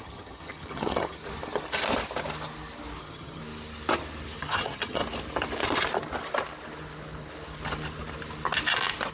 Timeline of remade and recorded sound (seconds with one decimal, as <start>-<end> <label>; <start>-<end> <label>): 0.0-1.2 remade; 1.2-3.0 recorded; 3.0-3.4 remade; 3.4-4.4 recorded; 4.4-5.0 remade; 5.0-9.1 recorded